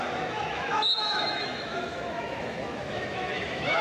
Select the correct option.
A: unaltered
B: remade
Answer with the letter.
B